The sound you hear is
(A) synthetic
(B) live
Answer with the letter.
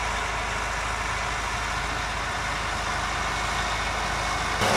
B